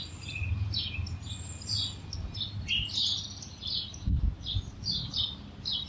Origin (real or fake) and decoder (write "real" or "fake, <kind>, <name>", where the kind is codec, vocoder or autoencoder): real